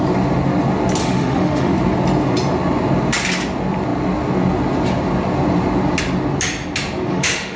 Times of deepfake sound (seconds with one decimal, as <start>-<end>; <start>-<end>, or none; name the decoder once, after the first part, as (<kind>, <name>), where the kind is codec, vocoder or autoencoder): 1.0-1.7 (autoencoder, DAC-VAE); 7.1-7.6